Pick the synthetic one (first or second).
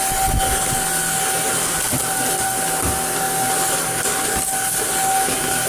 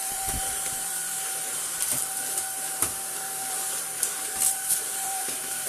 second